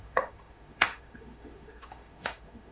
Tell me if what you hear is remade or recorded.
remade